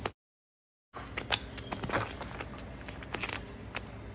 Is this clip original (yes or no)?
yes